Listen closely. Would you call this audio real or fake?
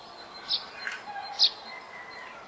real